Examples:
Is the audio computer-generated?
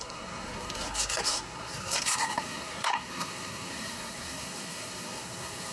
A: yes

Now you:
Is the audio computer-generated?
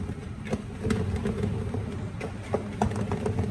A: no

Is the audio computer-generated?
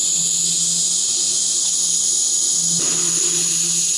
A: no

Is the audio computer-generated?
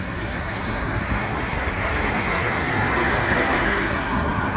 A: yes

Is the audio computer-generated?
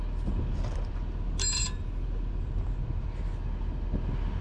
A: no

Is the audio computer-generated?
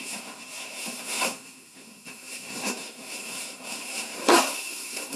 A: yes